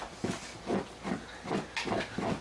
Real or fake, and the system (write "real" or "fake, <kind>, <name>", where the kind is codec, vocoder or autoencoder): real